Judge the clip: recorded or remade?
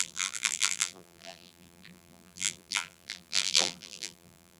remade